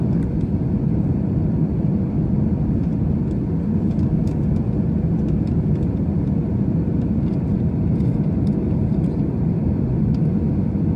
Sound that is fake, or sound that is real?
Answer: real